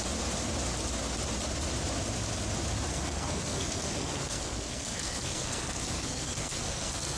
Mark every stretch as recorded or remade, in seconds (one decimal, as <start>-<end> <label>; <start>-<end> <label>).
0.0-2.9 recorded; 2.9-7.2 remade